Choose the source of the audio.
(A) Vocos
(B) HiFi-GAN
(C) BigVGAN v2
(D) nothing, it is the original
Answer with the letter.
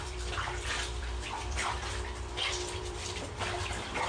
C